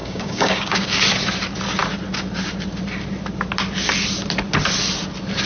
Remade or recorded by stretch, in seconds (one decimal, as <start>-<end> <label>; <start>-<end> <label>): 0.0-1.0 remade; 1.0-5.5 recorded